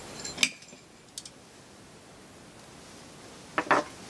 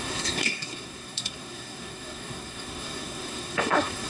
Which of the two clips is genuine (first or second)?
first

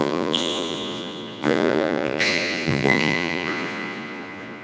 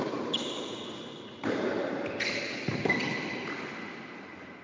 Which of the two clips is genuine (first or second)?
second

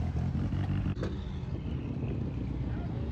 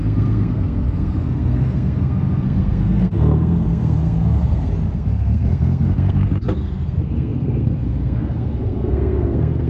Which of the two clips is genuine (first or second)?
first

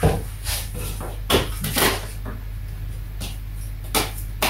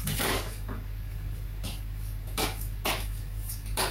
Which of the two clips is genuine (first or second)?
first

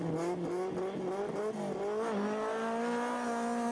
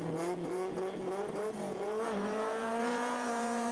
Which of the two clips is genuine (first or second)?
first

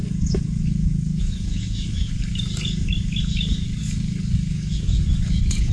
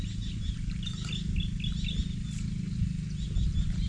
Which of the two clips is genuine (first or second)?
second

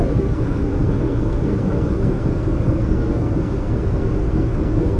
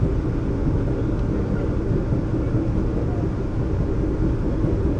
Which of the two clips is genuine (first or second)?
second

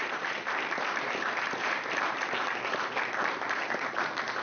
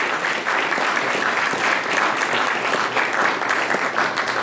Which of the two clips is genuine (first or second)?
second